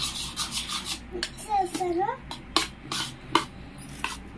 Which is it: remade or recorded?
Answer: recorded